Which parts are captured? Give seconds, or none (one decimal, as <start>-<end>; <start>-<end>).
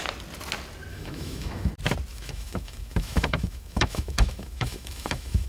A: 0.0-0.9; 1.7-2.1